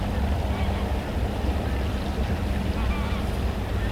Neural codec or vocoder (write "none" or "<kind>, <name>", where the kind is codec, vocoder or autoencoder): none